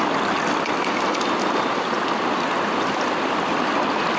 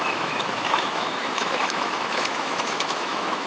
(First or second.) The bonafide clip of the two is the first